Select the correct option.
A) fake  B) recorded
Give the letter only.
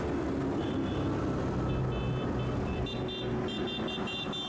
B